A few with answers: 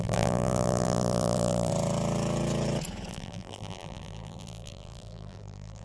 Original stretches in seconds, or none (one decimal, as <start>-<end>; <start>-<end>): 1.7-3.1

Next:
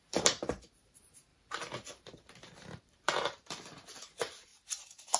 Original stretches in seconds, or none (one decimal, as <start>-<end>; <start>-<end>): 1.3-1.9

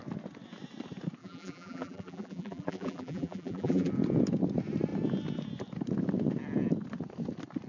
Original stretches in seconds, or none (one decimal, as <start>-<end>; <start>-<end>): 0.0-1.2; 3.9-7.7